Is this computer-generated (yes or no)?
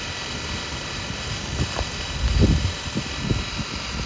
no